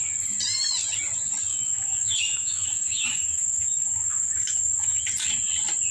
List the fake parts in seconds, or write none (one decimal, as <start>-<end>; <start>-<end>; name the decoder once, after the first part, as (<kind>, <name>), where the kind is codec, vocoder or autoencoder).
1.5-5.0 (autoencoder, DAC-VAE)